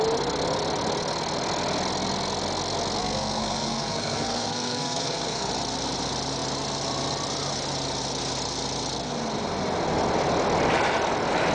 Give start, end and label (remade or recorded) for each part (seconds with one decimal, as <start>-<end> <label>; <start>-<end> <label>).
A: 0.0-3.0 recorded; 3.0-5.5 remade; 5.5-11.5 recorded